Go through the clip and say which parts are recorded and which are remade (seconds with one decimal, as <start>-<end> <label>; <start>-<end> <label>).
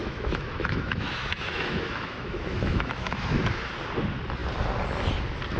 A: 0.0-3.4 remade; 3.4-5.6 recorded